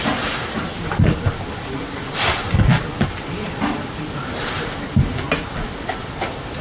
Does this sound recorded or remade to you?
recorded